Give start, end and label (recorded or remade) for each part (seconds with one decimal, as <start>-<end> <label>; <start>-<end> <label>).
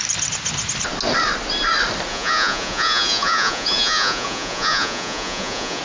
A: 0.0-2.1 recorded; 2.1-5.8 remade